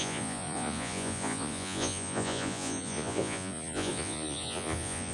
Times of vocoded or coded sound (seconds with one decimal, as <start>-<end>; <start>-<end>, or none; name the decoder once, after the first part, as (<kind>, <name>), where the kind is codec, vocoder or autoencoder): 0.0-5.1 (vocoder, Vocos)